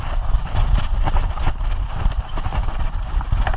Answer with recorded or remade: recorded